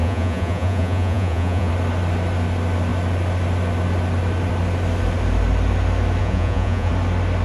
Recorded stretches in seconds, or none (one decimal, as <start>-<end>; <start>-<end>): 1.7-6.2; 6.9-7.4